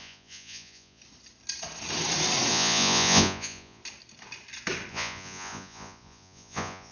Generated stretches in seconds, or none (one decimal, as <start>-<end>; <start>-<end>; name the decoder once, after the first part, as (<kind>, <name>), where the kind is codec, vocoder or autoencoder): 0.0-1.0 (vocoder, Vocos); 2.5-3.8; 4.9-6.9